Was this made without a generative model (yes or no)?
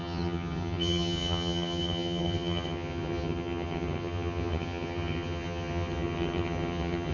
no